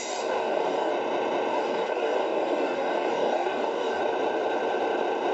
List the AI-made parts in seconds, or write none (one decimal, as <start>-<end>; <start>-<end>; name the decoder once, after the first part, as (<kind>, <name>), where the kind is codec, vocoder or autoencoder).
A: 0.0-0.9 (codec, DAC); 1.5-4.0